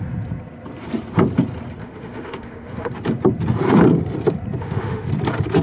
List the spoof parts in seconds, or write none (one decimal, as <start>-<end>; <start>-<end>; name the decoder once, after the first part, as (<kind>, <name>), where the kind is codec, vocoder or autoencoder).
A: 1.8-2.9 (autoencoder, DAC-VAE); 4.6-5.1